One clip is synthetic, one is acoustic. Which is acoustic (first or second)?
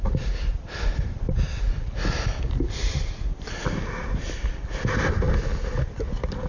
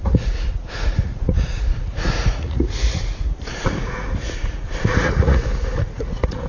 first